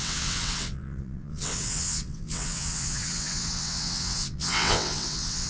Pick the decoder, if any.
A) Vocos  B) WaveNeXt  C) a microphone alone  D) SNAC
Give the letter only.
B